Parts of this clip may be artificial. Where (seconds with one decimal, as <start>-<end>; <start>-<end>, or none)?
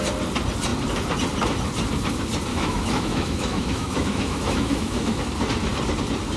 2.5-5.2